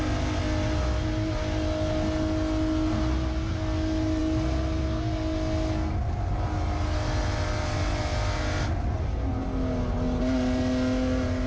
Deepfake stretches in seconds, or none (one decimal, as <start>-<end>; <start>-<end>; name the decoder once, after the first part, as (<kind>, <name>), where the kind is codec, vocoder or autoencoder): none